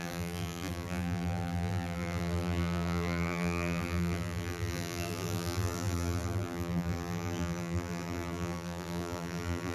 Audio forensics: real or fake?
fake